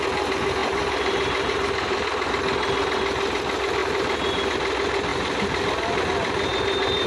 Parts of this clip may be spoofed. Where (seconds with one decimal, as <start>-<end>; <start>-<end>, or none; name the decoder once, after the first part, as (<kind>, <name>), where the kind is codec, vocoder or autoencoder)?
0.6-2.3 (vocoder, BigVGAN v2); 3.8-4.5; 5.1-6.0

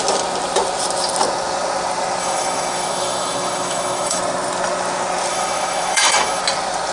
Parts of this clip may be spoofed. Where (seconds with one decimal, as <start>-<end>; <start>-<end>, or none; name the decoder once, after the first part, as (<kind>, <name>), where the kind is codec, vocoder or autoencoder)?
2.2-4.2 (autoencoder, DAC-VAE); 5.3-6.4